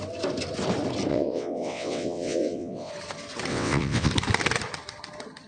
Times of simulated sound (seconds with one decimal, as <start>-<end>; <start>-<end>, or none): 1.1-2.9; 3.5-4.1